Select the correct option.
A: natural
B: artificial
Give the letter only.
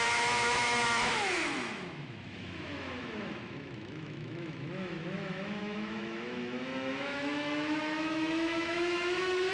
B